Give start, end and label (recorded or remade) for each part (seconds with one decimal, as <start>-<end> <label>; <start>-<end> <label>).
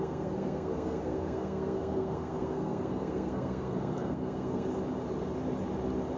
0.0-4.7 remade; 4.7-6.2 recorded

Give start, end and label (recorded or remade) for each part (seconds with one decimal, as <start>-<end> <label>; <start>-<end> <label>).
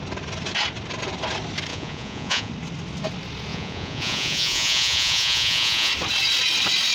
0.0-1.7 recorded; 1.7-2.5 remade; 2.5-3.5 recorded; 3.5-5.9 remade; 5.9-6.9 recorded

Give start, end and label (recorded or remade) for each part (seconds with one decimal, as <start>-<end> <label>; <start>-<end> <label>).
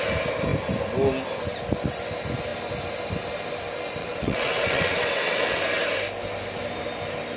0.0-4.0 recorded; 4.0-5.6 remade; 5.6-7.4 recorded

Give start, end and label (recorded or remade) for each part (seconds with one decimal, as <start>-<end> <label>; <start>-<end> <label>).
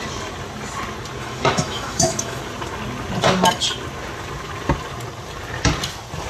0.0-1.2 recorded; 1.2-2.4 remade; 2.4-6.3 recorded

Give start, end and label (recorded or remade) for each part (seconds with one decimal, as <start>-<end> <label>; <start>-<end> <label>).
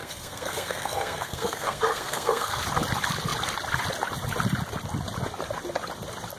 0.0-2.6 remade; 2.6-6.4 recorded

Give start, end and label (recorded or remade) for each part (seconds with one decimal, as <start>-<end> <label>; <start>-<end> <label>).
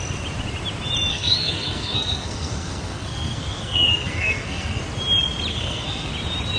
0.0-1.1 recorded; 1.1-4.8 remade; 4.8-5.5 recorded; 5.5-6.1 remade; 6.1-6.6 recorded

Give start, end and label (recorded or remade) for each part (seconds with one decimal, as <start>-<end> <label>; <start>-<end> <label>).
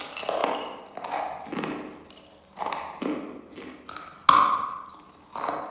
0.0-5.7 recorded